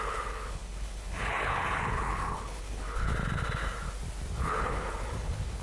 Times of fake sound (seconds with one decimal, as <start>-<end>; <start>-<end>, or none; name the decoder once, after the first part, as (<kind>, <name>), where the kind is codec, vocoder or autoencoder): 0.0-3.1 (codec, HILCodec); 4.3-5.6